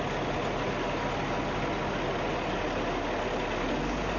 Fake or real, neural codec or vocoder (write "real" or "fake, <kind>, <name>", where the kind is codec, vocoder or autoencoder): real